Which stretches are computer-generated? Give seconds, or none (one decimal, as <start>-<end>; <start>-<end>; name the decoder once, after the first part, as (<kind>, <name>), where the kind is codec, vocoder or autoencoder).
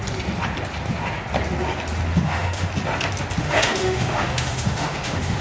2.1-2.7 (autoencoder, DAC-VAE); 3.4-5.4